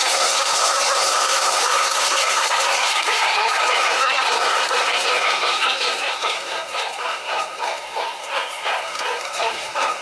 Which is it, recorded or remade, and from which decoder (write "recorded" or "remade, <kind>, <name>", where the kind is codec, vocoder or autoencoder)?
remade, codec, SNAC